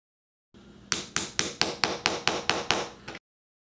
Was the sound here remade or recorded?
recorded